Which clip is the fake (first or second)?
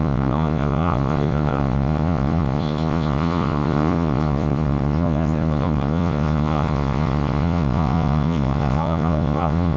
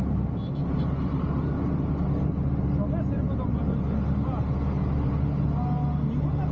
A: first